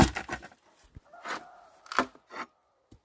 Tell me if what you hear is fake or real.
real